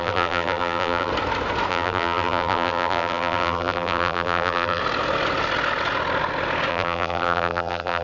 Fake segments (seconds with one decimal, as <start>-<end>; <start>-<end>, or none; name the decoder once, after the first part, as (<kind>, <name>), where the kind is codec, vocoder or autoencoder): 0.0-1.1 (vocoder, BigVGAN v2); 1.7-4.8; 6.7-8.0